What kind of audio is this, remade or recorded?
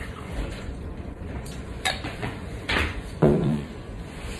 remade